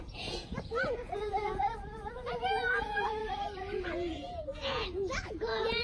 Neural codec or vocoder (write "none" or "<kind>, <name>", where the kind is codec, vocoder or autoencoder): vocoder, Vocos